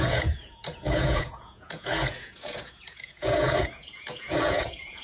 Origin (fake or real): fake